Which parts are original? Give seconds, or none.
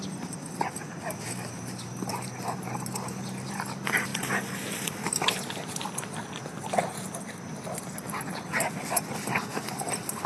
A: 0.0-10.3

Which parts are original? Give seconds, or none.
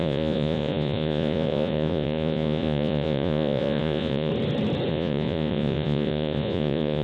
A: 4.3-4.9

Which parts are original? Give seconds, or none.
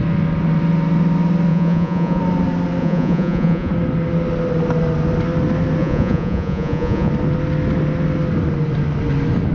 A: 0.0-1.5; 2.2-2.8; 3.7-5.8; 7.1-9.5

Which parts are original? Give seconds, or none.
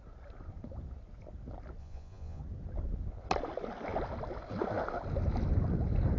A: 0.0-1.8; 2.4-6.2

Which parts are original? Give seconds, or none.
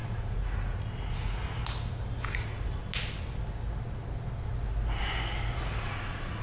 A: 1.4-2.3; 2.8-5.5